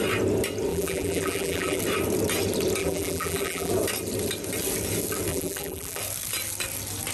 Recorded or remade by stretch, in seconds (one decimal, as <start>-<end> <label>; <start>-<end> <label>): 0.0-0.7 recorded; 0.7-1.8 remade; 1.8-2.8 recorded; 2.8-3.7 remade; 3.7-5.3 recorded; 5.3-6.0 remade; 6.0-7.1 recorded